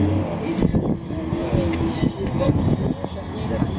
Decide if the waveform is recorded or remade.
recorded